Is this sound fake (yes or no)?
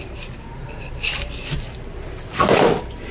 no